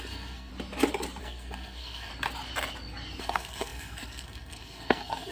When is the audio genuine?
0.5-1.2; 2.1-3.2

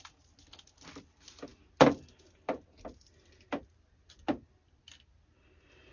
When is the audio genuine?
0.0-5.9

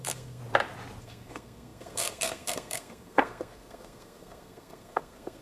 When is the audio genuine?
0.4-1.0

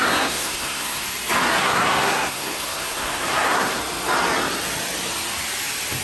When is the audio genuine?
1.0-1.6; 3.8-6.0

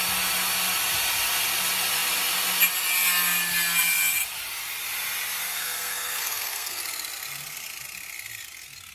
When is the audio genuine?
0.0-5.5; 6.8-8.9

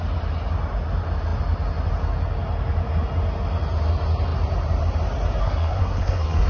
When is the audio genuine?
0.0-5.4

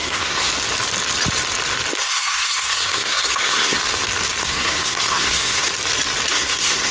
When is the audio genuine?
0.5-2.0; 3.8-4.4; 5.7-6.3